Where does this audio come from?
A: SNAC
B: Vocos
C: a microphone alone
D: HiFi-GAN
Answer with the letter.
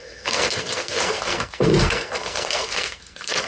A